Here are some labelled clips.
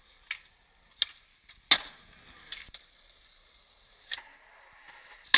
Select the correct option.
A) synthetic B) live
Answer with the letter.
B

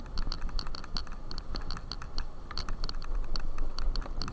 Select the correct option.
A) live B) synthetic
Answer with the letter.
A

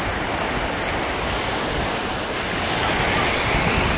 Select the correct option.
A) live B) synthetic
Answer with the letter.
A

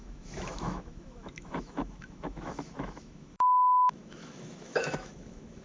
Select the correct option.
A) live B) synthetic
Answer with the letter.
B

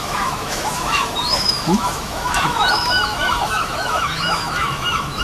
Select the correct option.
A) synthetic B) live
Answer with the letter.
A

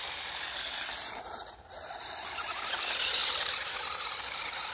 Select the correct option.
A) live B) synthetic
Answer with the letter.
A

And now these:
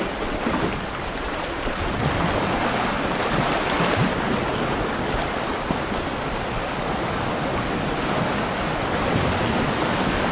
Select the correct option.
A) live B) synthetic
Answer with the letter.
A